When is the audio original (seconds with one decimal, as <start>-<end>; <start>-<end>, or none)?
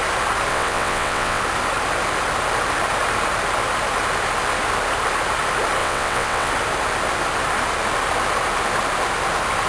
0.0-0.5; 1.4-5.8; 6.5-9.7